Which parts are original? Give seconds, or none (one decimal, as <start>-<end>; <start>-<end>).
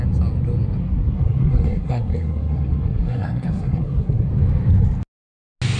0.0-0.8; 4.3-5.8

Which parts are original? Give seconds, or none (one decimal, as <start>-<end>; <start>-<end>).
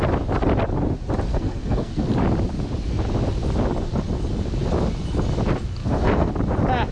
0.0-1.3; 2.1-5.8; 6.3-6.9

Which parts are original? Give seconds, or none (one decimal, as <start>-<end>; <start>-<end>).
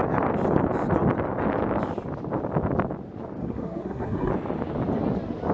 0.0-3.4; 4.3-5.5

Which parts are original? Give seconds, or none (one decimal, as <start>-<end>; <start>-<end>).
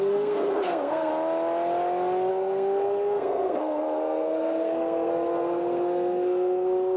1.1-2.3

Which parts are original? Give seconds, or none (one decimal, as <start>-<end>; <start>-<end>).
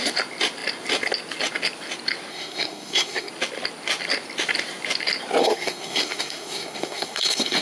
0.0-2.3; 3.3-5.4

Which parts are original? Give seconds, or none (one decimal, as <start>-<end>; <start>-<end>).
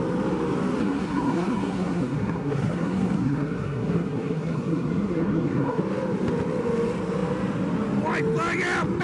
0.0-0.8; 5.8-9.0